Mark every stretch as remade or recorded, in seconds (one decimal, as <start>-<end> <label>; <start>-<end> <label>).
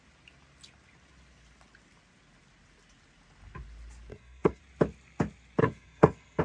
0.0-4.1 recorded; 4.1-4.6 remade; 4.6-5.6 recorded; 5.6-6.4 remade